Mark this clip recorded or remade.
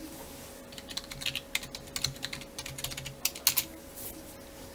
recorded